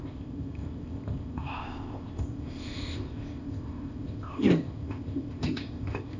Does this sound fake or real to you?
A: fake